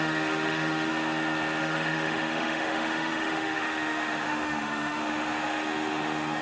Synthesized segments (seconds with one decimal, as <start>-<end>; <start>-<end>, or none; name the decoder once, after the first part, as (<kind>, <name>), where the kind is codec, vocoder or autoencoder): 0.0-0.9 (autoencoder, DAC-VAE); 1.6-6.4